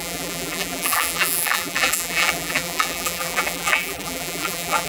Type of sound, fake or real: fake